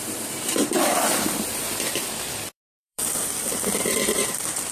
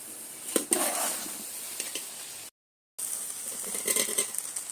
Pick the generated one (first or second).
first